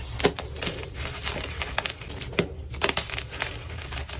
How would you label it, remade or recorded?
recorded